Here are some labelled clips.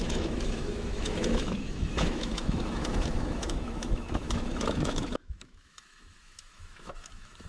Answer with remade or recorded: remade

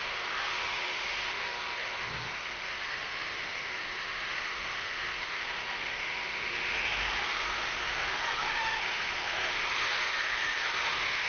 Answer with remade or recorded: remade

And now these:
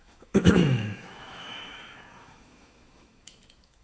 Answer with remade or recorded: remade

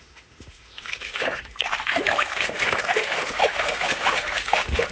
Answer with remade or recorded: remade